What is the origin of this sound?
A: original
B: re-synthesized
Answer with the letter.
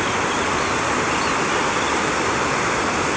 A